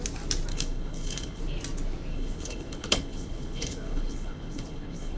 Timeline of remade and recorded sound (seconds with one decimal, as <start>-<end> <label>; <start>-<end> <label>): 0.0-0.5 recorded; 0.5-1.4 remade; 1.4-2.1 recorded; 2.1-5.2 remade